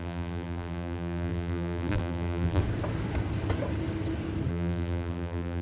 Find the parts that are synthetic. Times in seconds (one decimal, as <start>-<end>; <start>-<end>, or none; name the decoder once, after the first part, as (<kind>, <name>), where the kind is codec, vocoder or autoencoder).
0.0-2.6 (vocoder, BigVGAN v2); 4.5-5.6